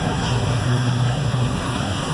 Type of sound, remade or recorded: remade